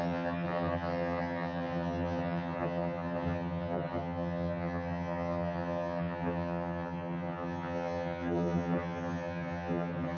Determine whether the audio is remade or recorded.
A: remade